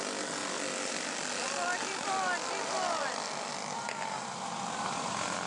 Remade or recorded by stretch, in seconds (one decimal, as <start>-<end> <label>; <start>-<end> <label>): 0.0-5.5 recorded